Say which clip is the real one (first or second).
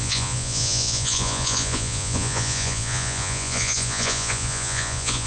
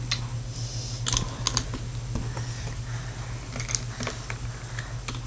second